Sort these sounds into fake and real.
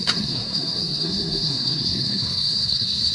fake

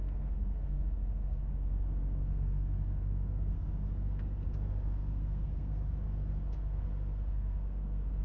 fake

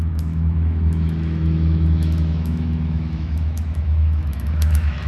fake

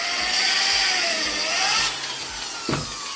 real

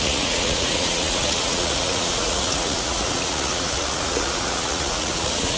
fake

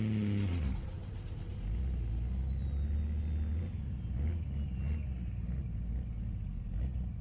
real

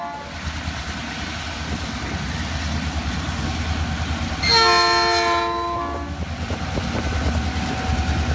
real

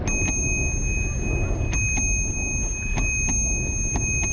real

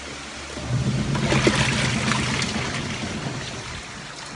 real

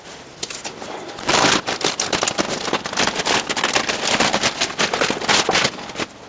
real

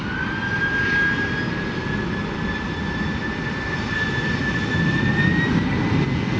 real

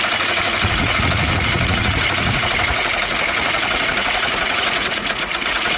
fake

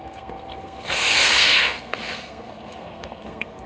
fake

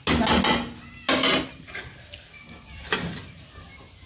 real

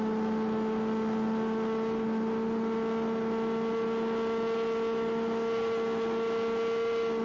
real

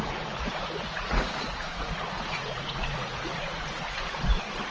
fake